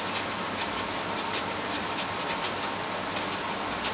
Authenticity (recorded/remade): recorded